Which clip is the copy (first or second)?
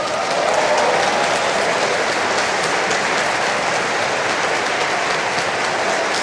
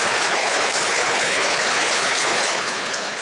second